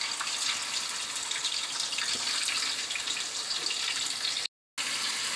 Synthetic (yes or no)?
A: no